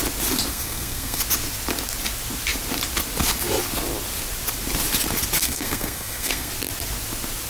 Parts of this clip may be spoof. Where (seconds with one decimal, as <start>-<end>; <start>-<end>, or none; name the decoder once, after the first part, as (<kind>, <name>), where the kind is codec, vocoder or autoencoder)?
0.5-1.2 (codec, SNAC); 5.4-6.5